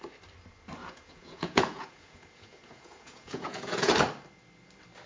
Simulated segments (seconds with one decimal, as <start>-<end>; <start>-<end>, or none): 0.8-3.9